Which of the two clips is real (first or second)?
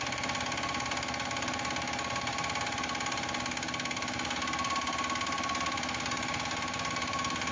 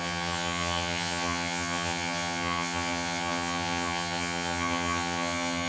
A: first